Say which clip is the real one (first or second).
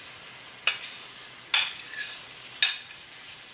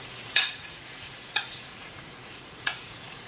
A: first